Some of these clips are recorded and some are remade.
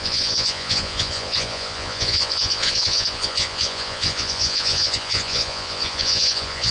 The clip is remade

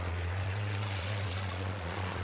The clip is remade